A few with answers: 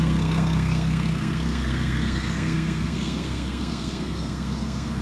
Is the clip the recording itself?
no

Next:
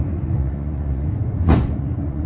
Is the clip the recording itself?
no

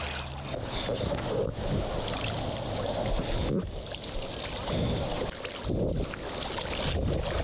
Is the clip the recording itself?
yes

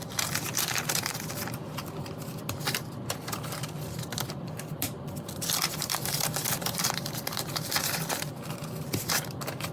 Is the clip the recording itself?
no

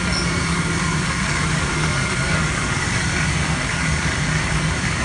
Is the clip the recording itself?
no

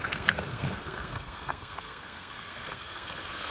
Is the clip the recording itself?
no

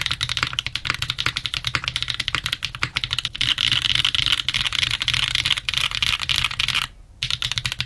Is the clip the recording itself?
yes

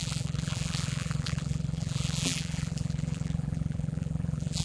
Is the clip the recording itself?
no